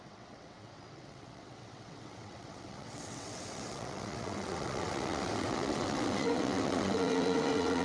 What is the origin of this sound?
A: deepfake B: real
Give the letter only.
A